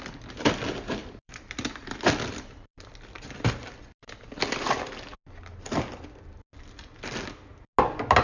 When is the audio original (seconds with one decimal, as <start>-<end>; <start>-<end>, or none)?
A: 0.0-1.0; 4.8-8.2